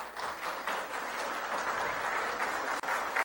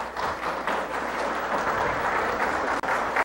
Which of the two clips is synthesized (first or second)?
second